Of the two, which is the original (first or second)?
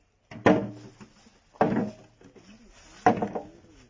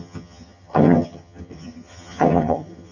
first